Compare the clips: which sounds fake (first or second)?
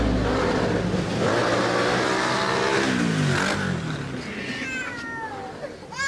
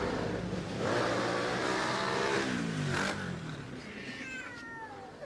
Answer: second